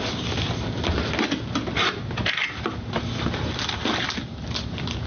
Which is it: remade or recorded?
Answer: recorded